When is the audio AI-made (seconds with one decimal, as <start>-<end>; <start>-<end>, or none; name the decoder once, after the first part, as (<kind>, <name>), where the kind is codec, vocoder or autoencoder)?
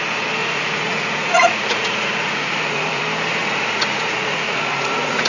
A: 0.4-3.0 (vocoder, Vocos); 3.4-5.3